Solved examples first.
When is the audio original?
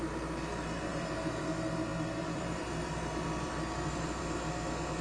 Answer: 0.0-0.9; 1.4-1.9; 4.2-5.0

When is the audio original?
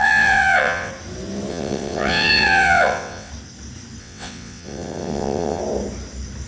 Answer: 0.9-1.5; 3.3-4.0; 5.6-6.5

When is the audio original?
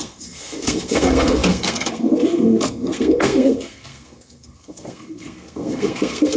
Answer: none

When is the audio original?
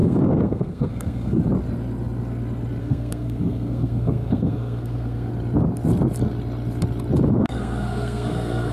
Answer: 1.4-2.8; 5.3-7.4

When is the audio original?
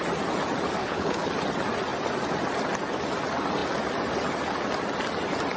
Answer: 0.0-0.8; 1.3-5.6